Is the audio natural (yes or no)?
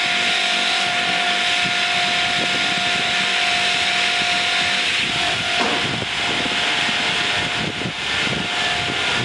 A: yes